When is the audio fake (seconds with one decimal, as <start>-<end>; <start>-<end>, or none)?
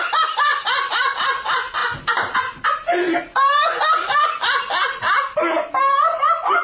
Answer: none